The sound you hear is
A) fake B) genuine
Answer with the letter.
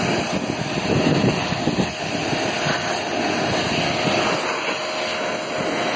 B